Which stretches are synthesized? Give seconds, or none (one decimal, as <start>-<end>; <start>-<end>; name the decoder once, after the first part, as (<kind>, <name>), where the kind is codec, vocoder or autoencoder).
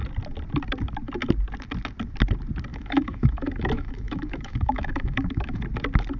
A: 2.7-5.6 (autoencoder, DAC-VAE)